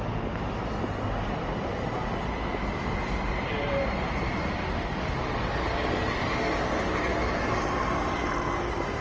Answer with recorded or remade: recorded